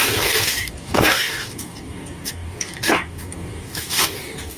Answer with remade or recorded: remade